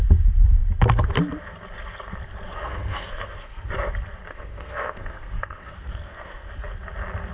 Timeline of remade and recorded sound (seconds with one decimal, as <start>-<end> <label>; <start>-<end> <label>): 0.0-2.5 recorded; 2.5-3.7 remade; 3.7-4.3 recorded; 4.3-6.5 remade; 6.5-7.3 recorded